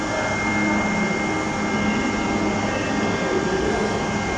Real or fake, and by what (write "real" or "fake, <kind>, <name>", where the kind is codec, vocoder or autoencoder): real